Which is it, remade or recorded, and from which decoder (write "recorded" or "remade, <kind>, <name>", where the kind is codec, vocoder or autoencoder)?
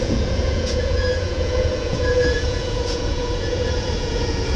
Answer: remade, vocoder, Vocos